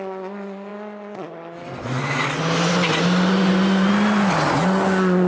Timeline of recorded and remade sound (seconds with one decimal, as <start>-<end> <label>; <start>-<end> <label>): 0.0-5.3 recorded